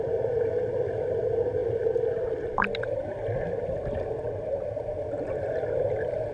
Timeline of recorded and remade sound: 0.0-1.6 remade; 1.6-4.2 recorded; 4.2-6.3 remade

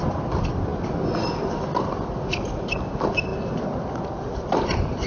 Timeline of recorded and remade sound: 0.0-5.1 remade

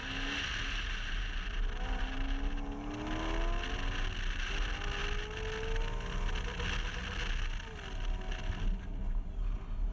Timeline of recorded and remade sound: 0.0-9.9 recorded

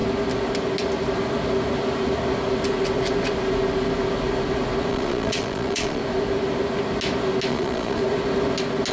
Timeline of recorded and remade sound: 0.0-4.9 recorded; 4.9-6.0 remade; 6.0-7.5 recorded; 7.5-8.0 remade; 8.0-8.9 recorded

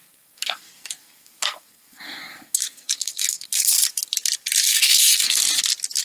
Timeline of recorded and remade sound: 0.0-3.6 remade; 3.6-4.7 recorded; 4.7-5.4 remade; 5.4-6.0 recorded

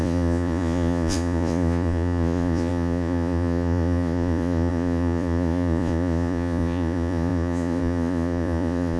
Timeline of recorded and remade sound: 0.0-9.0 remade